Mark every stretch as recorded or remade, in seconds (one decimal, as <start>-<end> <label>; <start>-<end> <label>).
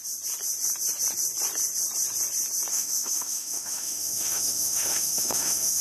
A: 0.0-2.7 recorded; 2.7-5.8 remade